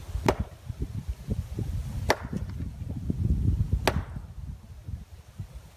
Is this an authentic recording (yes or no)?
yes